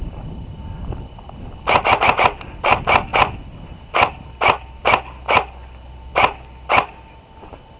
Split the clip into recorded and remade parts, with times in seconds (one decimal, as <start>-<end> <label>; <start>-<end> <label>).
0.0-7.8 recorded